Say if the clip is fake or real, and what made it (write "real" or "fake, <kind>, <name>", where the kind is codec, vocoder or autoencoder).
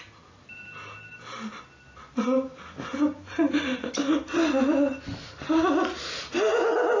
real